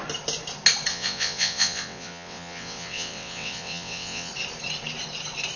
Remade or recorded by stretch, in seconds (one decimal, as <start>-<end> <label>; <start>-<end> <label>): 0.0-0.9 recorded; 0.9-4.3 remade; 4.3-5.6 recorded